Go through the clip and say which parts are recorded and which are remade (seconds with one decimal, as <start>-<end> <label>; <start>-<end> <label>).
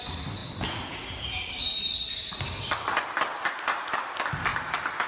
0.0-5.1 recorded